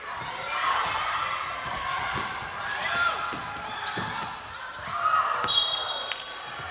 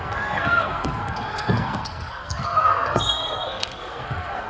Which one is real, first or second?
first